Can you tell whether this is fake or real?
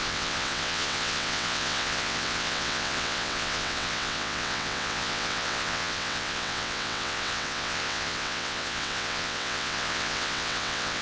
fake